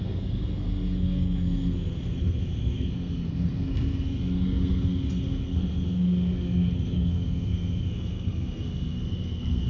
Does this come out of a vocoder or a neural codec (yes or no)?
yes